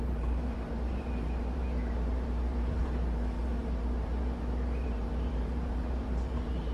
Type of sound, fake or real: fake